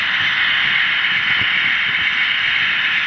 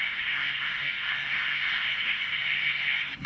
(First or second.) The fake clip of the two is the second